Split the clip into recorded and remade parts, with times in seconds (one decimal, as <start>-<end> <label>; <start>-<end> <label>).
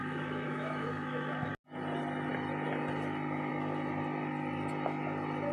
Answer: 0.0-1.5 remade; 1.5-5.5 recorded